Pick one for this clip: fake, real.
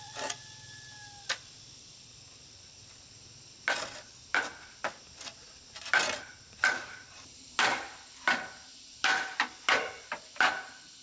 real